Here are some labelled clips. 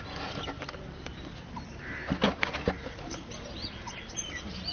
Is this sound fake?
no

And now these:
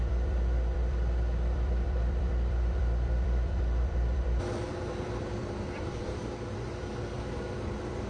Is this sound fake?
yes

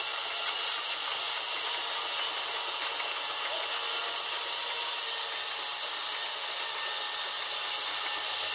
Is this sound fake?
no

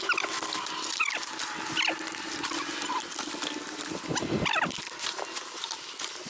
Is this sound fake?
no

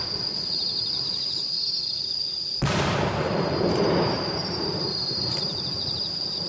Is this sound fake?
yes